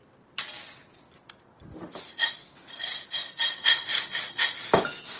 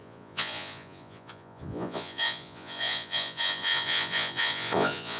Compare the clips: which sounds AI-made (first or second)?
second